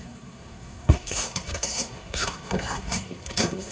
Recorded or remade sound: remade